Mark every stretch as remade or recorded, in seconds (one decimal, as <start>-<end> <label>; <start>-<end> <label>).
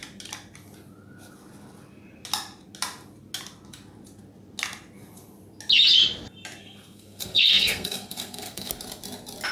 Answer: 0.0-6.6 recorded; 6.6-8.7 remade; 8.7-9.5 recorded